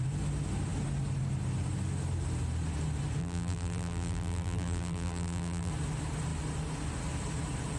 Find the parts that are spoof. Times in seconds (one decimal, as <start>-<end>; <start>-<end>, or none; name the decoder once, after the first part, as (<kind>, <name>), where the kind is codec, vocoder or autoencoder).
3.2-5.7 (vocoder, BigVGAN v2)